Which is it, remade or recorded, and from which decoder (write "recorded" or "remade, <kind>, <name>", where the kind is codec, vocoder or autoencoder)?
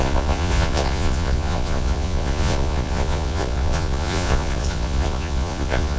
remade, vocoder, Vocos